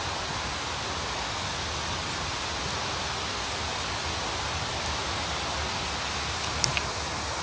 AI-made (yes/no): no